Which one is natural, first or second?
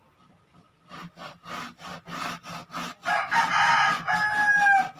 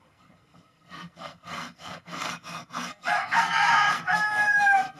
first